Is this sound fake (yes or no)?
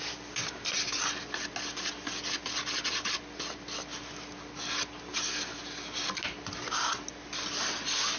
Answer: no